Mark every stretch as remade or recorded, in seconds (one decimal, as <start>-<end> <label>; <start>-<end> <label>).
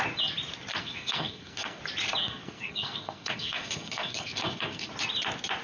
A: 0.0-0.8 recorded; 0.8-1.8 remade; 1.8-2.2 recorded; 2.2-4.9 remade; 4.9-5.6 recorded